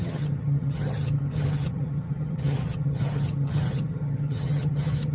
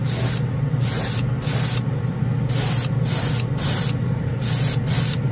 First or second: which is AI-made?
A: first